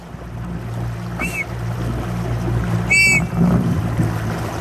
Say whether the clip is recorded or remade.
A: recorded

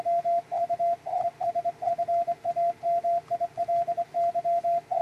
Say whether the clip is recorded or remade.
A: recorded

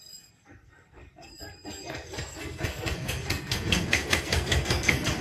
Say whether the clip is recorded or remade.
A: remade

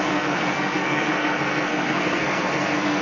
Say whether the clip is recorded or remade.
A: remade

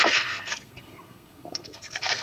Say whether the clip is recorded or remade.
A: remade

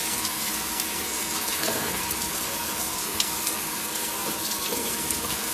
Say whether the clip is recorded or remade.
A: remade